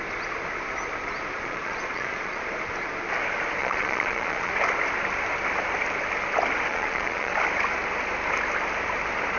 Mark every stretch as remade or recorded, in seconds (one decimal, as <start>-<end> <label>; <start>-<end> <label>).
0.0-1.3 recorded; 1.3-2.5 remade; 2.5-3.6 recorded; 3.6-4.5 remade; 4.5-6.7 recorded; 6.7-7.3 remade; 7.3-9.4 recorded